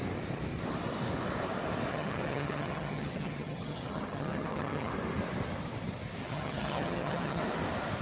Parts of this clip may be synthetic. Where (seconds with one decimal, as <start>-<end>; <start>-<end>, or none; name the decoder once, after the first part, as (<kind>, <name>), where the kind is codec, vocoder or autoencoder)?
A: 1.9-4.9 (vocoder, HiFi-GAN); 6.2-7.4